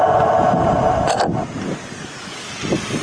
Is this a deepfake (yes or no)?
no